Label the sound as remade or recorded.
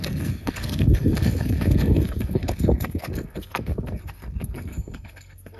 remade